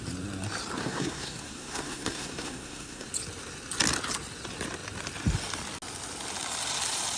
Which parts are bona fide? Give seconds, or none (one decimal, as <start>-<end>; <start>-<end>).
0.0-0.8; 3.1-7.2

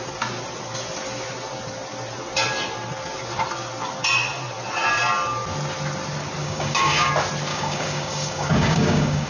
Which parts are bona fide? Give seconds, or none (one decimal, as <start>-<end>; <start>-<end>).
0.0-6.4; 7.1-7.5